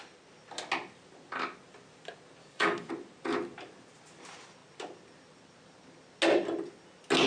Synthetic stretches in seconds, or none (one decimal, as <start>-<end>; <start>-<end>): 2.4-2.9